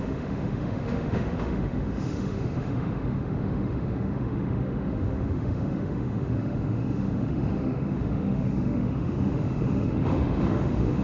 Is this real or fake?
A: fake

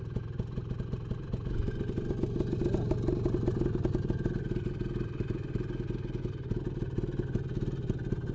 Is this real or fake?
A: real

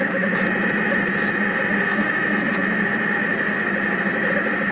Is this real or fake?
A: real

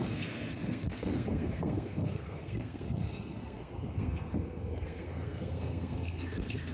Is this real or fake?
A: fake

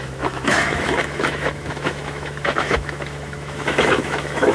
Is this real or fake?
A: fake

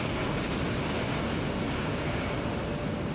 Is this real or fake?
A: real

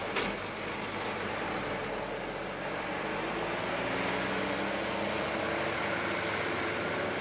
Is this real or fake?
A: real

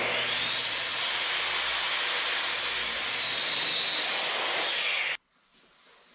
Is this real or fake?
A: real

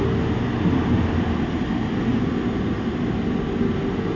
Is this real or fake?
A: real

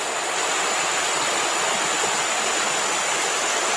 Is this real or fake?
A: real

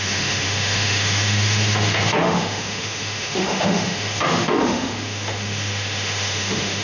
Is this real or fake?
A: fake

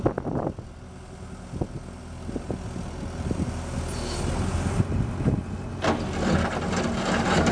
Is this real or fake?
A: real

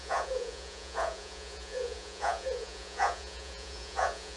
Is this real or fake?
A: fake